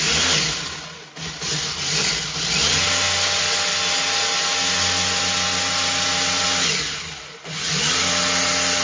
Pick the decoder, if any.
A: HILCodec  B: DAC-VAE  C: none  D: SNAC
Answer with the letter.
C